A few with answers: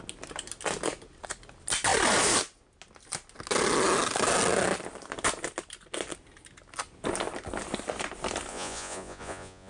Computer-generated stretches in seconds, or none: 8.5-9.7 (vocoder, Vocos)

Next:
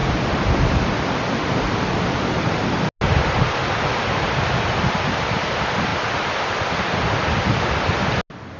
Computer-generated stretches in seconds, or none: none

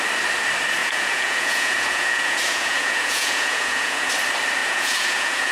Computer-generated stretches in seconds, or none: 0.8-4.1 (vocoder, Vocos); 4.6-5.5

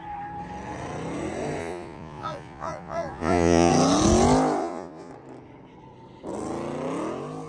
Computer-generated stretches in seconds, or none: 1.6-3.7 (vocoder, Vocos); 4.6-5.1

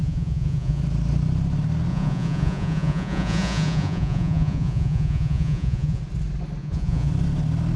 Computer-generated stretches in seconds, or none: 0.0-0.8 (vocoder, Vocos); 1.9-6.0; 6.6-7.1